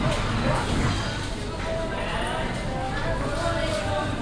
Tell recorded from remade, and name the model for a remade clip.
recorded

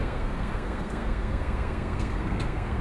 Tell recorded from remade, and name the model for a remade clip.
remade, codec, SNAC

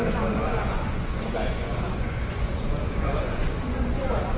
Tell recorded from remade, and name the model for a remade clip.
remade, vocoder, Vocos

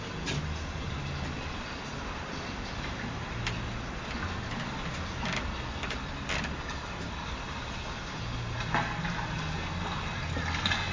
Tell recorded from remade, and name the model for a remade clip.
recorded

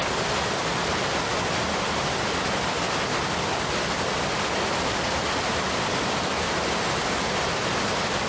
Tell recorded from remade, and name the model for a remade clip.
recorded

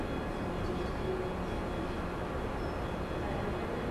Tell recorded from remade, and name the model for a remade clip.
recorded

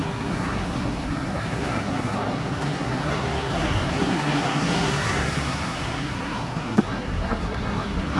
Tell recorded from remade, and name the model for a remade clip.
remade, codec, SNAC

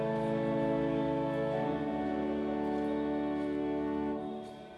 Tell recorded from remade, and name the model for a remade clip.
recorded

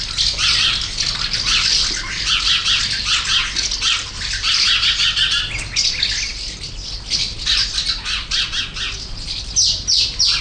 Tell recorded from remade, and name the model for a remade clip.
recorded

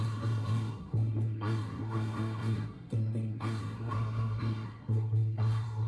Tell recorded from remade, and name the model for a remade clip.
remade, codec, SNAC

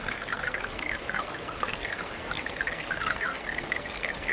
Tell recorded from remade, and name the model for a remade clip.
remade, codec, SNAC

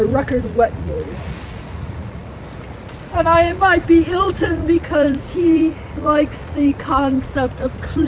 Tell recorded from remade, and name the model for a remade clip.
remade, vocoder, Vocos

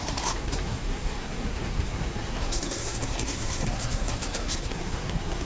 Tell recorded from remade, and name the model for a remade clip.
remade, codec, SNAC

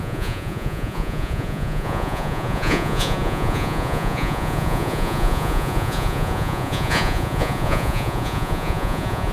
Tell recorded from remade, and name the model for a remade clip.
remade, vocoder, Vocos